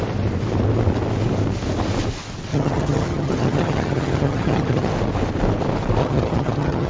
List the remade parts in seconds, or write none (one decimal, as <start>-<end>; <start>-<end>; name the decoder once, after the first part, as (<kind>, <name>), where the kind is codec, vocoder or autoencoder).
2.5-4.9 (vocoder, HiFi-GAN); 6.0-6.9